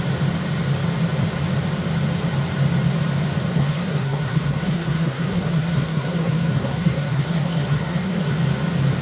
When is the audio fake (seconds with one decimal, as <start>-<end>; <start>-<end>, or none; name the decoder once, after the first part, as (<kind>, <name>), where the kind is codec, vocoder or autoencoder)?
3.5-8.3 (codec, SNAC)